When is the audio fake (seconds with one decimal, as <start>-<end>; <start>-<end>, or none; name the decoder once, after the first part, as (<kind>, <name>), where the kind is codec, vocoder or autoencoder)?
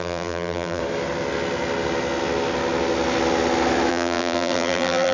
0.0-0.8 (vocoder, BigVGAN v2); 3.9-5.1